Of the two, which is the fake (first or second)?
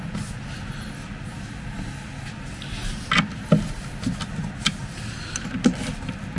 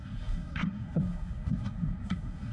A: second